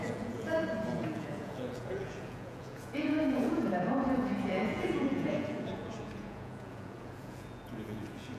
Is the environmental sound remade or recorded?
remade